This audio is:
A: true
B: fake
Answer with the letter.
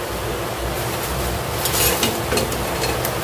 A